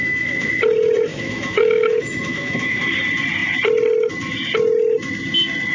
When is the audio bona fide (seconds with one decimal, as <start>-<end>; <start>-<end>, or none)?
0.5-1.1; 2.8-5.7